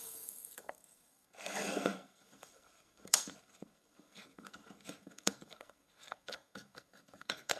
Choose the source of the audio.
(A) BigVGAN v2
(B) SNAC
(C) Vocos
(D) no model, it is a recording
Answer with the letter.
B